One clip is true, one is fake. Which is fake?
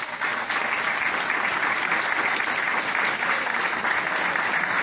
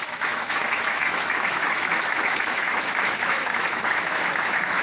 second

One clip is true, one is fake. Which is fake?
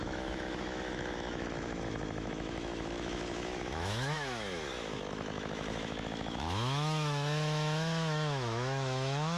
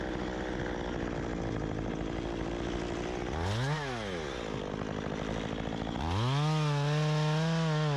first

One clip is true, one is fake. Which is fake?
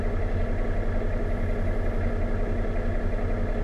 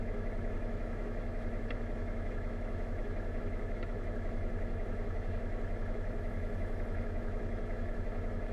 second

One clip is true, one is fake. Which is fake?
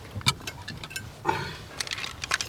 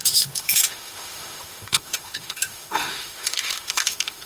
second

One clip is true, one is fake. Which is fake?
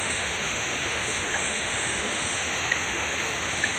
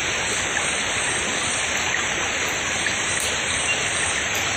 first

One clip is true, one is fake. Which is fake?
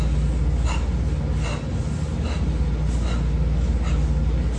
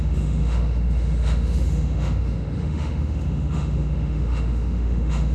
second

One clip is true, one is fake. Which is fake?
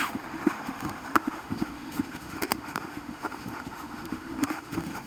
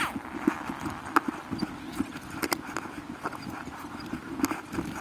first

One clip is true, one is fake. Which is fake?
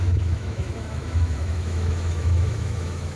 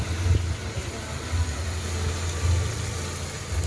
first